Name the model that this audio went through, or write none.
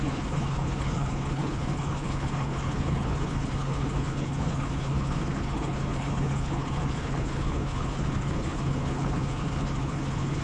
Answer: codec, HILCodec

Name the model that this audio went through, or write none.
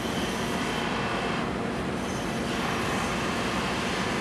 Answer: none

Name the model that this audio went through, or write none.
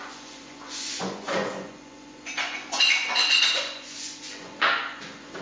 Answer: vocoder, Vocos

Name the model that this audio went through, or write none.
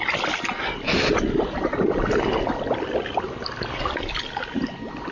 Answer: none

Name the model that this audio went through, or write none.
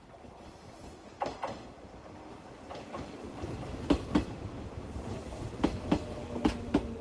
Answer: none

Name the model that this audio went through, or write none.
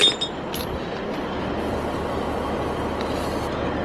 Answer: none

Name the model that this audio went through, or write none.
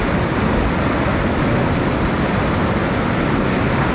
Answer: none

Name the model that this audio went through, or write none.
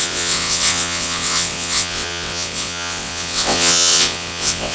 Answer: vocoder, WaveNeXt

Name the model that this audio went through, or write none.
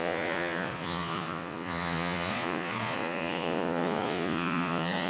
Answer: vocoder, Vocos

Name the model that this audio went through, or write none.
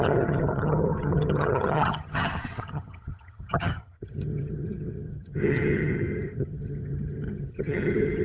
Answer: vocoder, HiFi-GAN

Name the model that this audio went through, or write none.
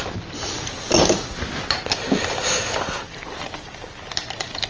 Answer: none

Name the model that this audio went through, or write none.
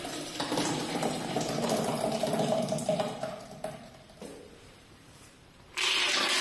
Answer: vocoder, BigVGAN v2